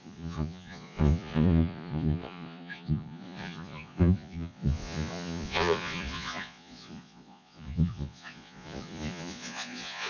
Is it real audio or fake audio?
fake